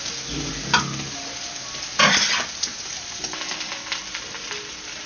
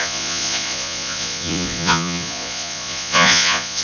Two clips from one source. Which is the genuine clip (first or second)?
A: first